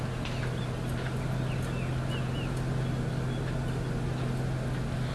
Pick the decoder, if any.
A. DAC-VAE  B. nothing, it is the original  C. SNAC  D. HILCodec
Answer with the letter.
B